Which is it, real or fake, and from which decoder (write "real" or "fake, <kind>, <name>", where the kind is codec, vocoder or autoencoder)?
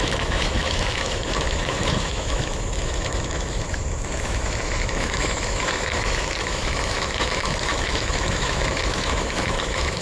fake, autoencoder, DAC-VAE